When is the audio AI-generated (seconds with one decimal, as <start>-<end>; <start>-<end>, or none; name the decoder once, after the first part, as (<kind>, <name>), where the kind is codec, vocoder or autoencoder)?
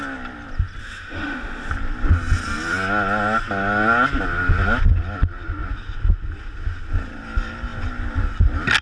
0.8-1.7 (autoencoder, DAC-VAE)